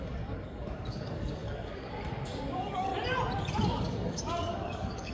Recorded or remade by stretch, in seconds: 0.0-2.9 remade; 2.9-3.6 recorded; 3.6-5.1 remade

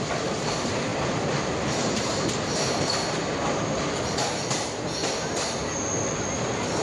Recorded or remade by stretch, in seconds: 0.0-0.9 recorded; 0.9-4.0 remade; 4.0-6.8 recorded

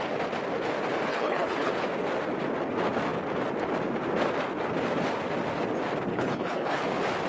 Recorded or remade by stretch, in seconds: 0.0-1.1 recorded; 1.1-1.7 remade; 1.7-6.1 recorded; 6.1-6.8 remade; 6.8-7.3 recorded

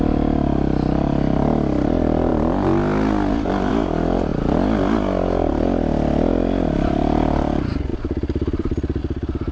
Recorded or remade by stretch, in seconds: 0.0-7.9 recorded; 7.9-9.0 remade; 9.0-9.5 recorded

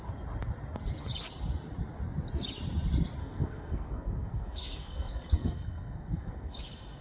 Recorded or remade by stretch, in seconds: 0.0-3.2 recorded; 3.2-6.6 remade; 6.6-7.0 recorded